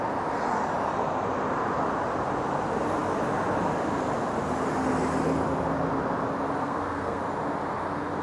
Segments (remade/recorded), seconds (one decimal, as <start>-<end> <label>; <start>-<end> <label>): 0.0-6.6 recorded; 6.6-7.2 remade; 7.2-8.2 recorded